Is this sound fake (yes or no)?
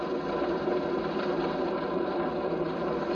no